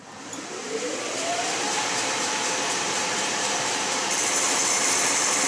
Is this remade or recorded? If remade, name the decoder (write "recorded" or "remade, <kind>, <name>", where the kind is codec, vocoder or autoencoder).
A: remade, vocoder, BigVGAN v2